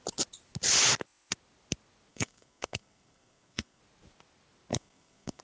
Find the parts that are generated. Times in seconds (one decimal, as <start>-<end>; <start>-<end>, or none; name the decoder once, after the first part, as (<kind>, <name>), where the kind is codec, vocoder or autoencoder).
2.1-3.8 (codec, SNAC); 4.7-5.4